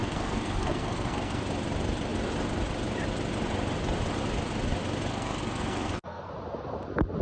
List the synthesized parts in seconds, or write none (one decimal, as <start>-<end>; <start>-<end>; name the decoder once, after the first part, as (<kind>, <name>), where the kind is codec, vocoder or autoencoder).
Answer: 0.0-1.4 (codec, SNAC); 5.1-6.3

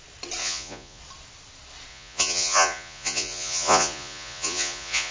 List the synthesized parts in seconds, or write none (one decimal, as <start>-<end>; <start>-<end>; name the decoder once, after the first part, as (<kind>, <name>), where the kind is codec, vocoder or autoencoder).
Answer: 0.4-1.0 (vocoder, Vocos); 1.9-5.1

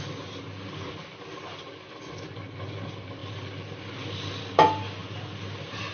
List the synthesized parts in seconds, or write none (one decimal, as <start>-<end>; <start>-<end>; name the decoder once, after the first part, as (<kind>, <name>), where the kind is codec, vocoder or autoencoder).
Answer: none

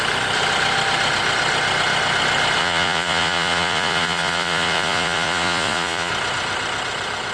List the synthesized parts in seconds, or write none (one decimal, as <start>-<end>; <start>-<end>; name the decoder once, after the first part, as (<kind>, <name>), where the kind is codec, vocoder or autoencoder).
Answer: 2.6-6.1 (vocoder, Vocos)

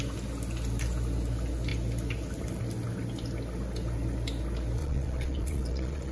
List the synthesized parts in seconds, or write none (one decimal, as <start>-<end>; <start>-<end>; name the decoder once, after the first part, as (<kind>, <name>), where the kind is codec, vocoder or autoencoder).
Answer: 4.8-6.1 (vocoder, Vocos)